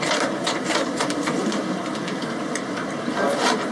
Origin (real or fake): fake